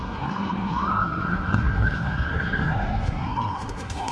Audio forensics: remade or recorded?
remade